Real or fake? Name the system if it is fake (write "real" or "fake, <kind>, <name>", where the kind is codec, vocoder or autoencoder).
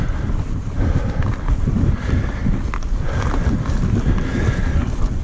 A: real